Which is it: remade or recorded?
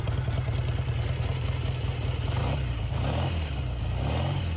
recorded